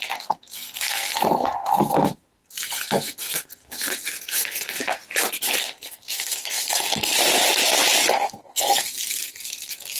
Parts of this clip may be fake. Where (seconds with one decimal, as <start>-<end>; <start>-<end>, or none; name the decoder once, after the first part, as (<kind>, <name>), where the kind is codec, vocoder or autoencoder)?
0.0-5.0 (codec, SNAC); 5.6-7.1; 8.1-10.0